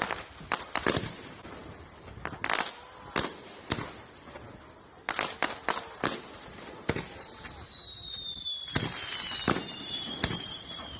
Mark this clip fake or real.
real